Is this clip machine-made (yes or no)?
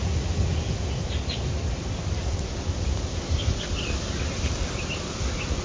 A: no